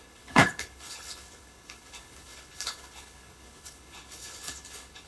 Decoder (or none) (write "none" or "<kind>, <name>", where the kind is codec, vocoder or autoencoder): codec, HILCodec